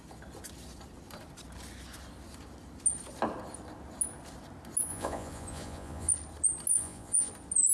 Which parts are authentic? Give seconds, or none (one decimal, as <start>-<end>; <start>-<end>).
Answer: 0.0-4.9; 6.1-6.7; 7.3-7.7